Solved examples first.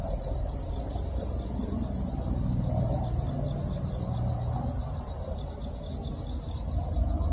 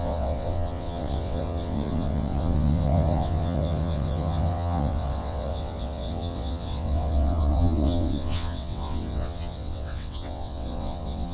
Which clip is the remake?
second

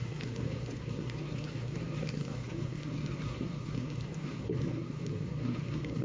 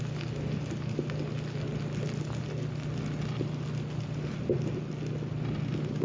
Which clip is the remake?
first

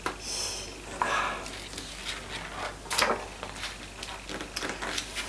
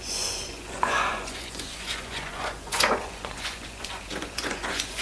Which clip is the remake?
second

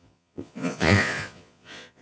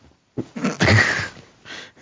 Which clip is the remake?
first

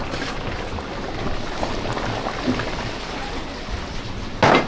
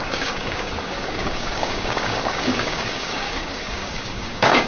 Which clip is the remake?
second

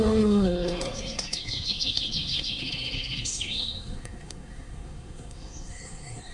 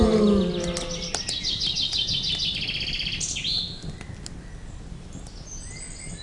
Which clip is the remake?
first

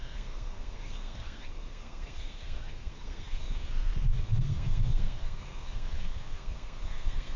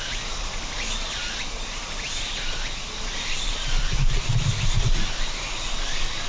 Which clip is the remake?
first